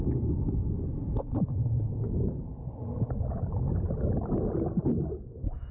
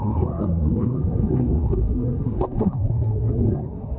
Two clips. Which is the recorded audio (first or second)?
first